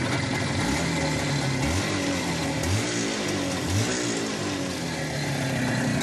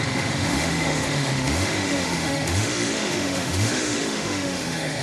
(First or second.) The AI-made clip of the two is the second